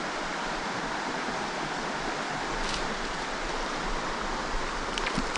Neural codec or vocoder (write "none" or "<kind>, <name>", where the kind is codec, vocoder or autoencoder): vocoder, BigVGAN v2